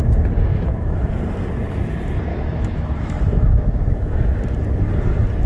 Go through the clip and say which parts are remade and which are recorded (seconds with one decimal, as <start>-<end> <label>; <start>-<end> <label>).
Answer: 0.0-0.5 recorded; 0.5-1.1 remade; 1.1-2.3 recorded; 2.3-4.4 remade; 4.4-5.5 recorded